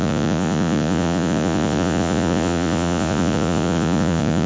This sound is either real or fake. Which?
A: fake